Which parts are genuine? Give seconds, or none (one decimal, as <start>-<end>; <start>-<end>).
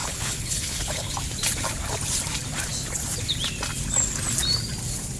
1.1-5.2